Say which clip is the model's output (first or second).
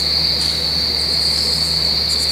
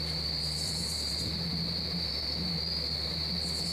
second